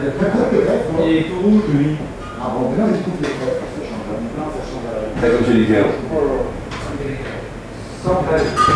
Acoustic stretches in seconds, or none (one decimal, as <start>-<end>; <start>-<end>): 0.0-2.9; 3.6-8.8